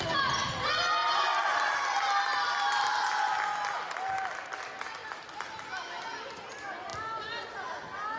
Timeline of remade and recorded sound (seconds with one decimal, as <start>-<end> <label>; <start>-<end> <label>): 0.0-8.2 recorded